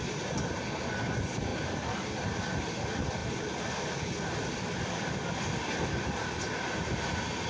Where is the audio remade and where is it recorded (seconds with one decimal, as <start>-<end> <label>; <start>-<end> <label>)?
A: 0.0-7.5 recorded